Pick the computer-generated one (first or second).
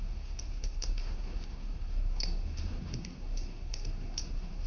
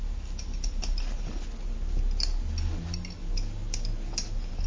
first